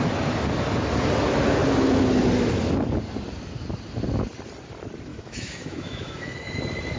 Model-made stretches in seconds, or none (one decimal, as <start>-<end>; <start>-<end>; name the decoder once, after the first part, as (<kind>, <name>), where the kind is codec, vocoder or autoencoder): 5.1-6.6 (autoencoder, DAC-VAE)